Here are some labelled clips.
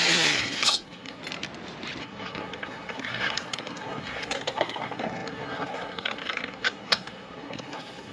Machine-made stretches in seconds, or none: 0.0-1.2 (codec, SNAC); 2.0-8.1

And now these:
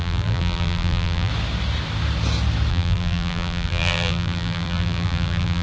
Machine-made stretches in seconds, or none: 0.0-1.3 (vocoder, BigVGAN v2); 2.7-5.6